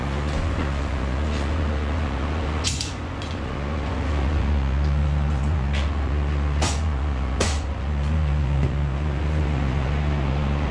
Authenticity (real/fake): fake